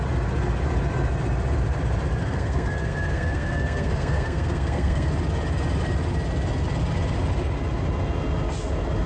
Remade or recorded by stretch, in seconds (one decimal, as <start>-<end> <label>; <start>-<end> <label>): 0.0-2.2 recorded; 2.2-5.1 remade; 5.1-9.1 recorded